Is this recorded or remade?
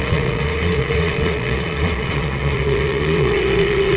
remade